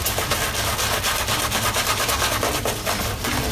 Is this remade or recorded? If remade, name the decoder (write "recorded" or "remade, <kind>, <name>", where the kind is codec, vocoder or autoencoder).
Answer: recorded